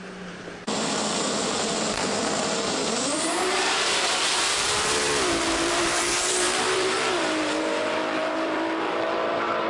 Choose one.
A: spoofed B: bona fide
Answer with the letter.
A